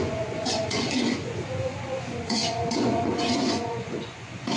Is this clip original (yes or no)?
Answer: no